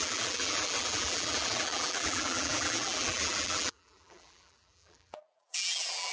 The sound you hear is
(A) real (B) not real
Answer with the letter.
B